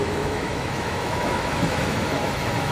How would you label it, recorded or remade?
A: remade